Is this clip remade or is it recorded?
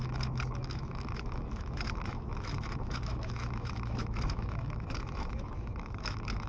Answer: remade